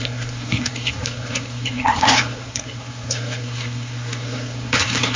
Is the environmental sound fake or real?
fake